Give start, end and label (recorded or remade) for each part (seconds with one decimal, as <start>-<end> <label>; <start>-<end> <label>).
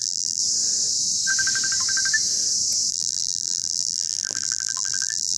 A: 0.0-0.4 remade; 0.4-2.9 recorded; 2.9-5.4 remade